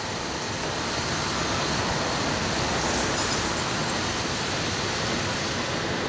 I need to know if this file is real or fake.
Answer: real